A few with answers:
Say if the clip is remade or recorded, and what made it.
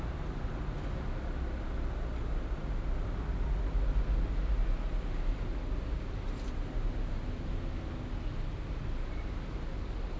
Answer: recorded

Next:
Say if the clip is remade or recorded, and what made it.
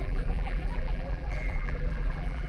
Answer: remade, vocoder, BigVGAN v2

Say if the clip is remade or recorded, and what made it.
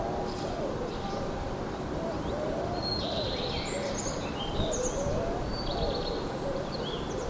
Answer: remade, vocoder, BigVGAN v2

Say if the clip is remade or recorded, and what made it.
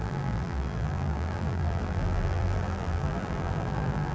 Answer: remade, vocoder, BigVGAN v2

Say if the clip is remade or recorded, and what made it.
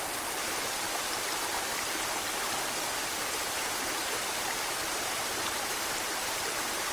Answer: remade, vocoder, BigVGAN v2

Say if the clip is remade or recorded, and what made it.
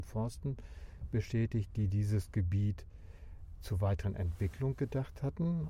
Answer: recorded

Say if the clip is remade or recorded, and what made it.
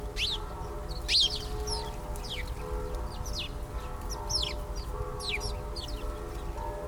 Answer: recorded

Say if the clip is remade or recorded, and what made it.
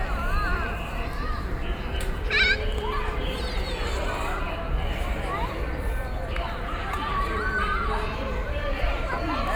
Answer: remade, vocoder, BigVGAN v2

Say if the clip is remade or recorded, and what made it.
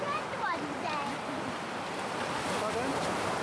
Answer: remade, vocoder, BigVGAN v2